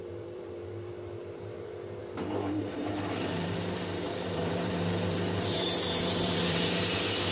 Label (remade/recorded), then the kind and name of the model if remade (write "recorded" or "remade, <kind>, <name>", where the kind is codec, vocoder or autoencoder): remade, vocoder, BigVGAN v2